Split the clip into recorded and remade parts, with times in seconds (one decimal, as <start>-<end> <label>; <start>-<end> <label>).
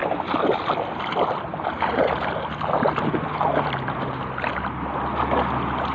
0.0-5.9 recorded